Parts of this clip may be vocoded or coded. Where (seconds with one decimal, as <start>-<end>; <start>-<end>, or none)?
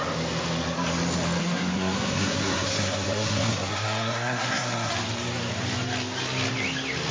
1.4-4.9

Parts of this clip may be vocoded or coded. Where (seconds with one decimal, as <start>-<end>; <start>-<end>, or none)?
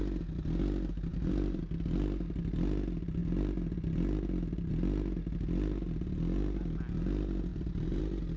1.1-1.6; 7.5-8.0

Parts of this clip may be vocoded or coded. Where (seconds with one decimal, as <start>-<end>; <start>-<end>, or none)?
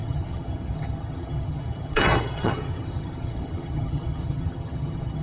0.0-5.2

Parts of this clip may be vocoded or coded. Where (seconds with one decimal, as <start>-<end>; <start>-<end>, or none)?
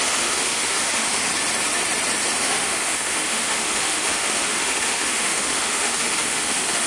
0.0-1.3; 2.4-6.9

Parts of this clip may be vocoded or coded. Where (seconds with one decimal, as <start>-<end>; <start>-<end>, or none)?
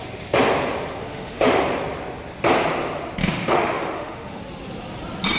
1.0-1.6; 3.2-4.4